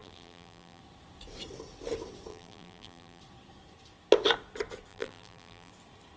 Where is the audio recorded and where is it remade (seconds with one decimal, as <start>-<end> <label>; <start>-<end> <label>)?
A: 0.0-0.8 remade; 0.8-2.3 recorded; 2.3-3.2 remade; 3.2-4.9 recorded; 4.9-5.7 remade; 5.7-6.2 recorded